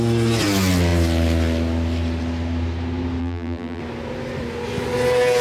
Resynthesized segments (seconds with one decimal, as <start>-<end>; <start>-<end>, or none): 3.2-3.8